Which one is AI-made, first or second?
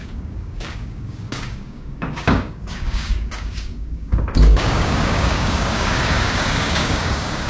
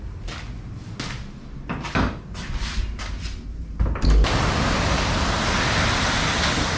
first